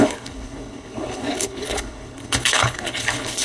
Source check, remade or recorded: remade